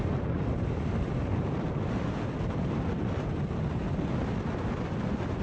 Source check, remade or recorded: recorded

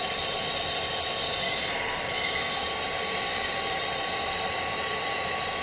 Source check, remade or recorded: recorded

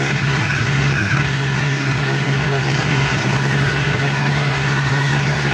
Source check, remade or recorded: remade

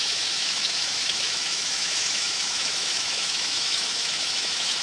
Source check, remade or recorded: remade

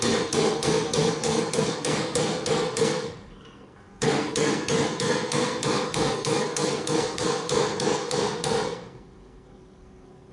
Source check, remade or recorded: remade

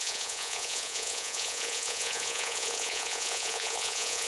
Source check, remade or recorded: remade